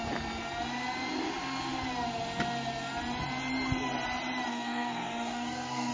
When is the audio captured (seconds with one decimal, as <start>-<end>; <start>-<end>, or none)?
0.0-4.5